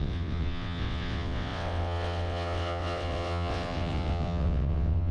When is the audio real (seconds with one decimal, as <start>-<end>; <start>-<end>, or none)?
none